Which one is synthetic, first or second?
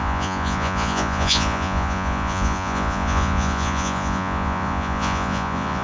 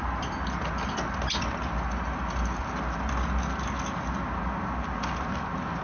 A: first